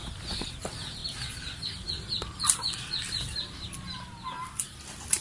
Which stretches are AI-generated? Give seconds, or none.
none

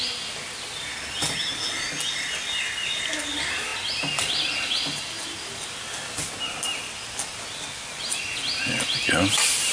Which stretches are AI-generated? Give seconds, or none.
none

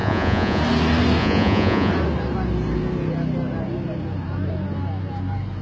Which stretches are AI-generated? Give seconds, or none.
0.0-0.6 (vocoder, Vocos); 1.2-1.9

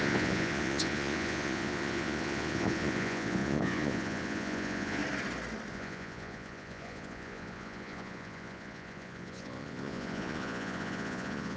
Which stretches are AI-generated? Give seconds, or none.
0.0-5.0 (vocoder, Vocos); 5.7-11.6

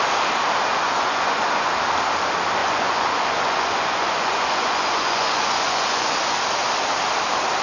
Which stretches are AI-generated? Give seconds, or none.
0.7-1.7 (vocoder, Vocos); 2.6-6.2

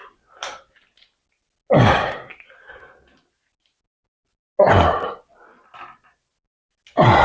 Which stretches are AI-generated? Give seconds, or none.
none